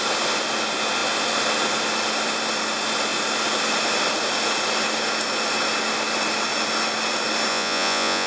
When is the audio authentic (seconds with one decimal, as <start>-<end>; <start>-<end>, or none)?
0.0-7.5